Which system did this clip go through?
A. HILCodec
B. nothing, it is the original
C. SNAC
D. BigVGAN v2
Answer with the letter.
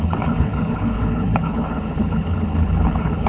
A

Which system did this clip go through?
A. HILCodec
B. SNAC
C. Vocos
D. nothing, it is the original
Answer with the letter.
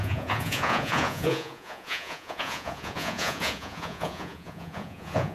C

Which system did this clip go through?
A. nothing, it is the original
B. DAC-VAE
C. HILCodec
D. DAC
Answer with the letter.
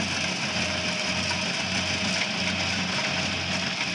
A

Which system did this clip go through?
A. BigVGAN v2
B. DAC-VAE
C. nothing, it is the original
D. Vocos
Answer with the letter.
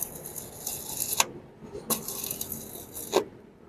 C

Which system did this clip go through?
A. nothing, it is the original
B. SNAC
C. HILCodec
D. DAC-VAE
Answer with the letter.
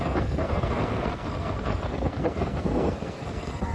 B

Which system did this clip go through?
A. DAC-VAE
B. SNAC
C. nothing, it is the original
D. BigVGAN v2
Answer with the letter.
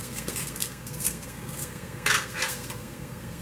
B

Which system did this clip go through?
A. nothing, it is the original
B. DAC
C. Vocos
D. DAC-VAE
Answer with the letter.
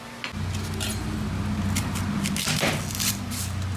A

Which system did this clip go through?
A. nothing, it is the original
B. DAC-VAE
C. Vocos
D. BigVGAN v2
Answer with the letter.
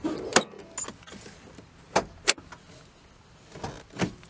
A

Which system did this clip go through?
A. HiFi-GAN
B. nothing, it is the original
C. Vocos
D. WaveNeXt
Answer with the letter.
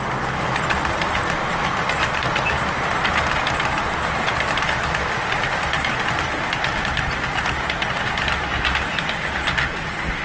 B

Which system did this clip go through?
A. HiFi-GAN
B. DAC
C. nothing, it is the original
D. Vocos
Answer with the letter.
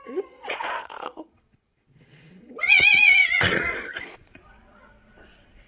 D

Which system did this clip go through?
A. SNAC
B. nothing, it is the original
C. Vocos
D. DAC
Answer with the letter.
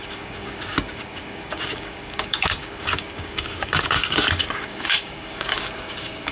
D